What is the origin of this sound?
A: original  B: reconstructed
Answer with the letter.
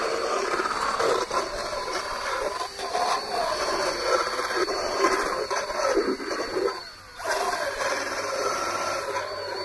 B